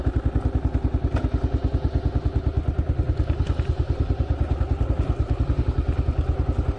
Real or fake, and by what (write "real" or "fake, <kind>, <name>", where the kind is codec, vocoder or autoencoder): real